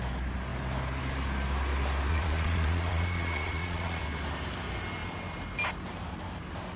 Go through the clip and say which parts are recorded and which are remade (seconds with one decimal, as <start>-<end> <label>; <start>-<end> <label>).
0.0-2.1 recorded; 2.1-4.0 remade; 4.0-6.8 recorded